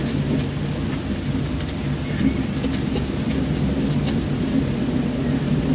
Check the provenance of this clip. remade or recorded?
recorded